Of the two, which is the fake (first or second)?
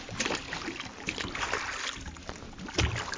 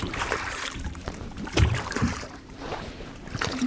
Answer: second